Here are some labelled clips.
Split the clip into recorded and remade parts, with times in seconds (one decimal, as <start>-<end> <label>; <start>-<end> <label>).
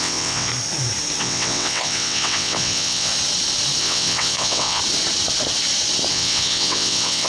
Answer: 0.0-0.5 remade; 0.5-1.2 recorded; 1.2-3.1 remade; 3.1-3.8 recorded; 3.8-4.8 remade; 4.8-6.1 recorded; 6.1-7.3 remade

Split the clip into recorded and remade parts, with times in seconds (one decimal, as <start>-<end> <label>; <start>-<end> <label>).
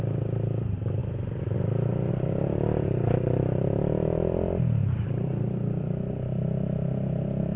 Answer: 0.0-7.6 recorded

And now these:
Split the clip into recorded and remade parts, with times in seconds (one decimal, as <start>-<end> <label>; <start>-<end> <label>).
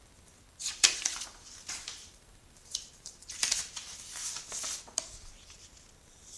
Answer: 0.0-0.6 recorded; 0.6-4.4 remade; 4.4-6.4 recorded